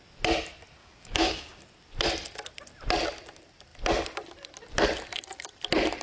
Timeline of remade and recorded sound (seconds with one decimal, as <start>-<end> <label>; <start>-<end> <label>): 0.0-0.8 recorded; 0.8-1.6 remade; 1.6-6.0 recorded